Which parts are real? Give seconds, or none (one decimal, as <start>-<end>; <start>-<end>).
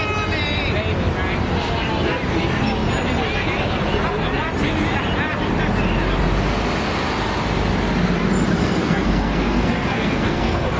0.0-8.6